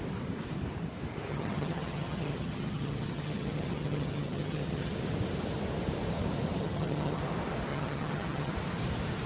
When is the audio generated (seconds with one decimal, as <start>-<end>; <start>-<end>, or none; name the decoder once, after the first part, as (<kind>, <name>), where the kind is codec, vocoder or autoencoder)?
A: 1.3-4.9 (vocoder, HiFi-GAN); 6.6-7.2; 7.7-8.5